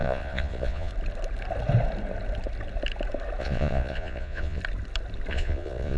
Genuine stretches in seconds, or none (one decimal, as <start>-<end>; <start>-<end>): 0.9-3.4; 4.6-5.3